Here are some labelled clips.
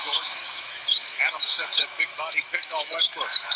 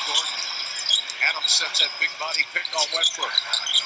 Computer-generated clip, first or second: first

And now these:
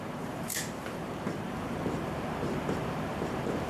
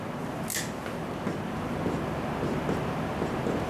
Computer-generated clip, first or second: first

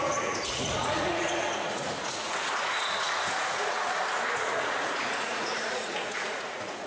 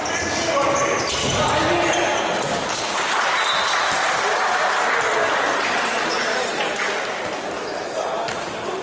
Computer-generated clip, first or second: first